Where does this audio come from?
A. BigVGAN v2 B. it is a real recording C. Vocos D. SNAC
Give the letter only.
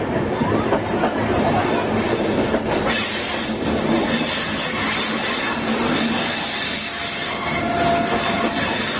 B